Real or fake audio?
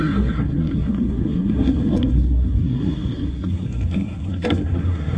fake